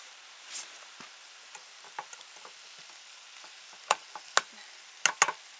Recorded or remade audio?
recorded